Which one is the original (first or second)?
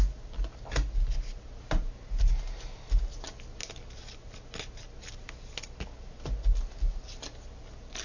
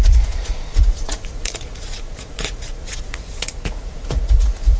first